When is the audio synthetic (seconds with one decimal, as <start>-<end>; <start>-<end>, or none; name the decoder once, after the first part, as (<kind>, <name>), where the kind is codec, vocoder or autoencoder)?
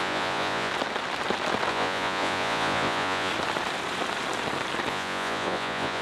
0.0-0.7 (vocoder, Vocos); 1.7-3.3; 4.9-6.0